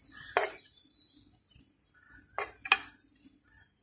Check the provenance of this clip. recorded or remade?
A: remade